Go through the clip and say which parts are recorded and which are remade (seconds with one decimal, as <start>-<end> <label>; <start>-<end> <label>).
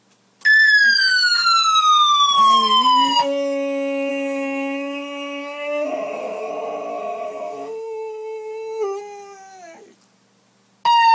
0.0-4.1 recorded; 4.1-6.5 remade; 6.5-6.9 recorded; 6.9-9.0 remade; 9.0-11.1 recorded